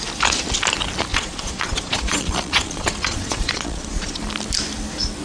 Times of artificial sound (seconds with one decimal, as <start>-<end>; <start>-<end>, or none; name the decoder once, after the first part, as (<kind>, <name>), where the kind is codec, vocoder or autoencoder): 1.1-4.2 (vocoder, Vocos)